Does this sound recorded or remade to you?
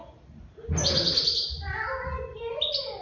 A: recorded